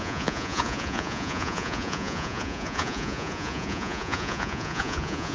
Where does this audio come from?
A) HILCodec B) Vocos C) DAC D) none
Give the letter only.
B